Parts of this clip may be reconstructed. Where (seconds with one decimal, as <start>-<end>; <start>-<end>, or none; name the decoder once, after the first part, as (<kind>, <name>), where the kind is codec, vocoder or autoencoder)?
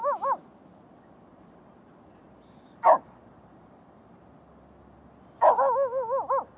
1.3-4.4 (vocoder, BigVGAN v2)